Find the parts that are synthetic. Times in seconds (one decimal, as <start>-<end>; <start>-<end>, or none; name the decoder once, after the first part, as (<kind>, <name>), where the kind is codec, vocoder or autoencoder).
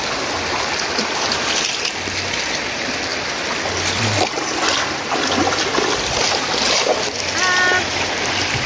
none